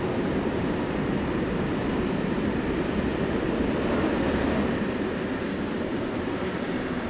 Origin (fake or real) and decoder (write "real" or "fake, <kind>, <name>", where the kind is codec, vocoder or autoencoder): real